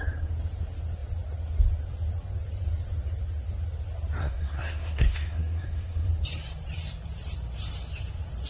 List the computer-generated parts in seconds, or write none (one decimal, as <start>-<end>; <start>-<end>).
4.2-6.1